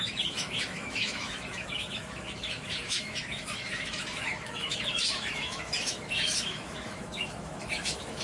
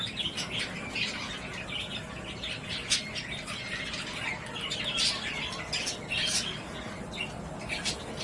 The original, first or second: second